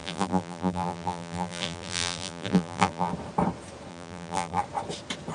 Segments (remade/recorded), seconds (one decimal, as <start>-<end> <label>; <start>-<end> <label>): 0.0-3.1 remade; 3.1-3.9 recorded; 3.9-4.6 remade; 4.6-5.3 recorded